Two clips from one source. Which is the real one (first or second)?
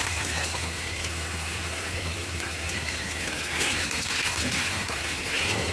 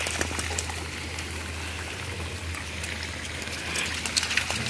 second